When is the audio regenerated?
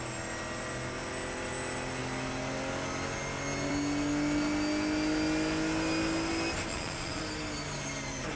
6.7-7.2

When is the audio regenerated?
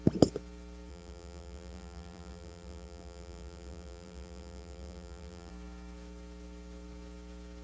0.9-5.5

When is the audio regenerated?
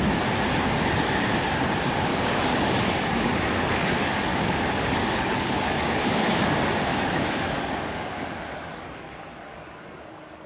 2.1-3.9; 4.3-6.3; 6.9-10.5